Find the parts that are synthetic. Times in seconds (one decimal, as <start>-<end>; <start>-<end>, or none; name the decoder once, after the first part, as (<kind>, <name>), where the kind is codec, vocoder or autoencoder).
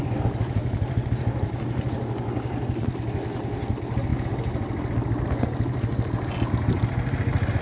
none